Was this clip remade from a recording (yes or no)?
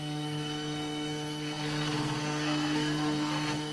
yes